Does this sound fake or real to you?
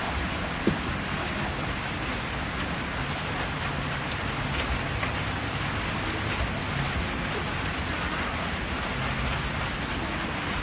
real